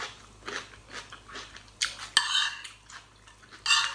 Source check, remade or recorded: recorded